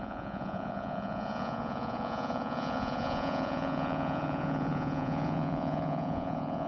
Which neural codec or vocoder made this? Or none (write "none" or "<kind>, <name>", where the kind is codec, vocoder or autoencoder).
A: vocoder, Vocos